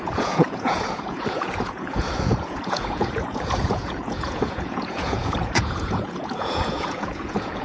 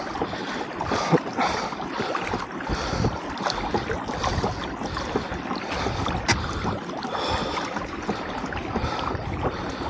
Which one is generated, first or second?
first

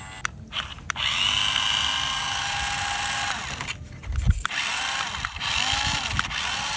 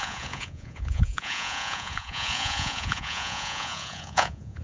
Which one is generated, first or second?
second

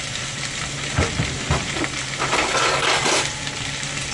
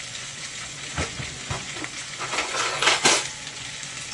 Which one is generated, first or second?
second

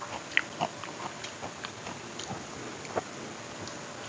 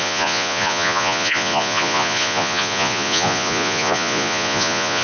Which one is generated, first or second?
second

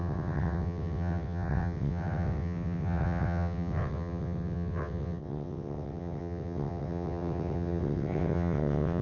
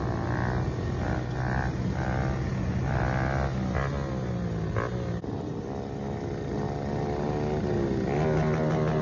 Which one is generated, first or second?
first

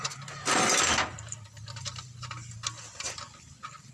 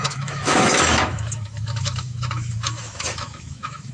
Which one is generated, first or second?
second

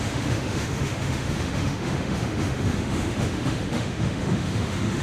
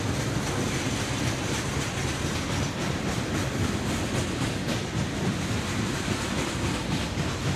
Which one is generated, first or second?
first